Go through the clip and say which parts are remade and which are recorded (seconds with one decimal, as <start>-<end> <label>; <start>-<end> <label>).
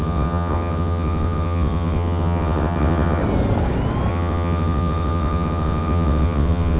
0.0-3.2 remade; 3.2-4.1 recorded; 4.1-6.8 remade